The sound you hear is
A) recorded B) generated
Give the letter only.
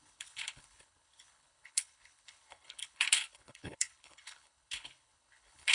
B